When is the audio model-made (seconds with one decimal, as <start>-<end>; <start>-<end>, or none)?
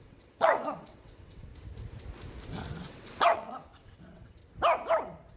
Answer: 0.0-1.5; 2.7-4.4